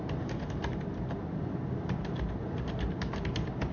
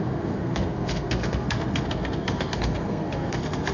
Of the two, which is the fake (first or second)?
second